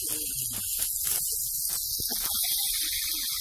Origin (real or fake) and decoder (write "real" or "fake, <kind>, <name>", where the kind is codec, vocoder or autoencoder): real